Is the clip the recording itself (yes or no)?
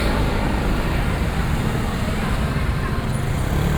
yes